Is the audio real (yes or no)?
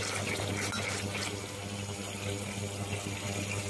yes